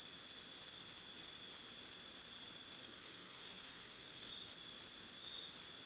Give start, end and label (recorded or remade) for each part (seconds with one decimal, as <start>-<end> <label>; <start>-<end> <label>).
0.0-2.8 recorded; 2.8-4.3 remade; 4.3-5.9 recorded